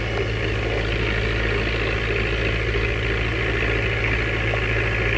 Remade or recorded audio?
recorded